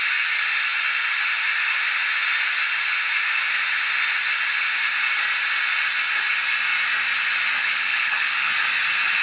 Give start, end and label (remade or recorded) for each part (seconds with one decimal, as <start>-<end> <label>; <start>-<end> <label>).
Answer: 0.0-7.6 recorded; 7.6-8.5 remade; 8.5-9.2 recorded